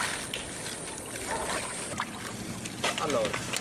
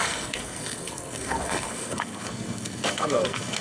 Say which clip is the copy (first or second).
second